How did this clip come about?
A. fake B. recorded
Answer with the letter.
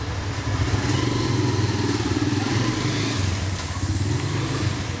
B